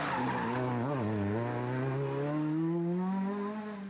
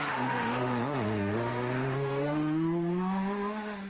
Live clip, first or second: first